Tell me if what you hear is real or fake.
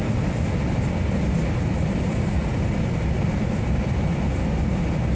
real